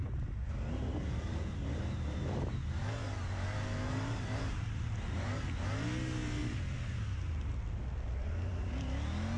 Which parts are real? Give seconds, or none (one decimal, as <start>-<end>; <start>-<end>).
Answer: 0.0-1.3; 5.3-9.4